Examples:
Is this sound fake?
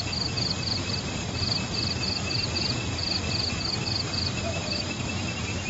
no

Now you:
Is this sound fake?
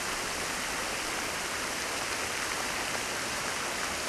no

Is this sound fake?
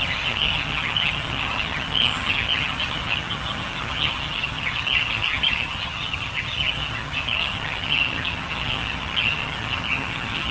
yes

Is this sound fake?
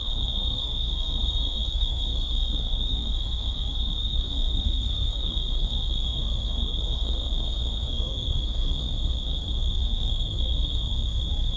yes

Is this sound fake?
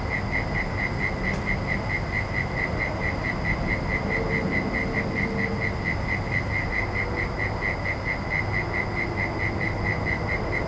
no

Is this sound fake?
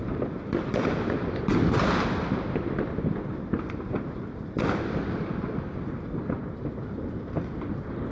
no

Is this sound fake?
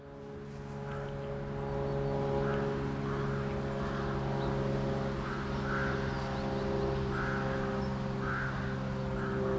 no